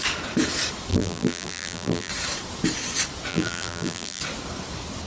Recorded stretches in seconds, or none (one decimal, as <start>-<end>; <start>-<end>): 0.0-0.9; 2.1-3.3; 4.2-5.1